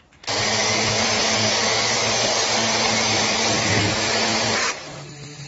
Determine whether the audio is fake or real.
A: real